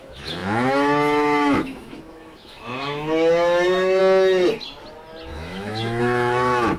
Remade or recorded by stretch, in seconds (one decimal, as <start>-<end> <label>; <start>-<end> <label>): 0.0-4.0 remade; 4.0-5.3 recorded; 5.3-6.8 remade